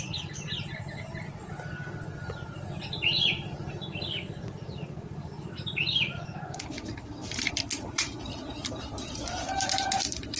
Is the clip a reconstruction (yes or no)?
yes